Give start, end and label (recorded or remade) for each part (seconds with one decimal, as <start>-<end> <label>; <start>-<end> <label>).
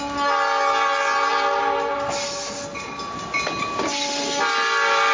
0.0-5.1 recorded